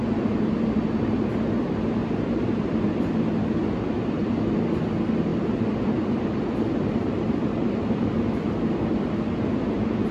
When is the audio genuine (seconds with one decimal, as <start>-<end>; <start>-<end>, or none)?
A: 0.0-2.0; 3.1-5.3; 9.6-10.1